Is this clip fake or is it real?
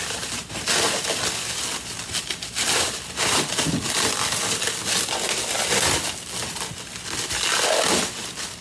real